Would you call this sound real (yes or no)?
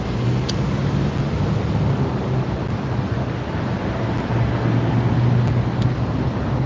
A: yes